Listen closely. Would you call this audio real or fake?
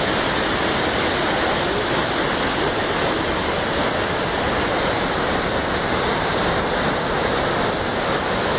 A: real